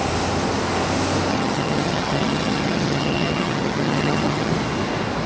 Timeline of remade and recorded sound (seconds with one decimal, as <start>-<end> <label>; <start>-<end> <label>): 0.0-1.3 recorded; 1.3-4.5 remade; 4.5-5.3 recorded